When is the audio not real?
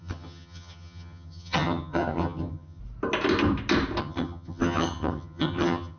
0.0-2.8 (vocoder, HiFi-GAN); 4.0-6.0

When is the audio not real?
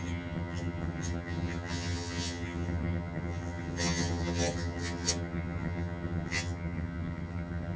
0.0-7.8 (vocoder, HiFi-GAN)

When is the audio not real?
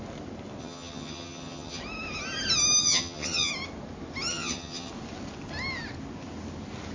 0.6-1.8 (vocoder, HiFi-GAN); 2.8-3.5; 4.3-4.9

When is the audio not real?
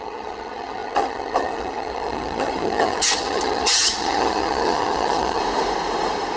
0.0-5.4 (vocoder, HiFi-GAN)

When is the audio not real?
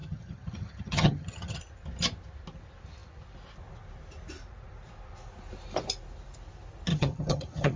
0.0-1.6 (vocoder, HiFi-GAN); 6.9-7.8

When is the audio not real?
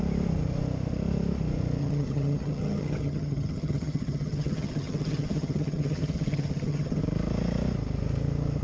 1.8-7.0 (vocoder, HiFi-GAN)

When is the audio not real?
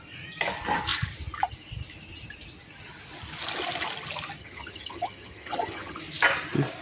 4.4-6.0 (vocoder, HiFi-GAN)